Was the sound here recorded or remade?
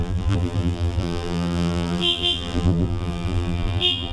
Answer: remade